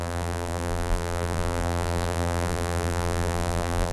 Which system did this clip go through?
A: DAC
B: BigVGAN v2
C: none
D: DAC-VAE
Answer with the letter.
B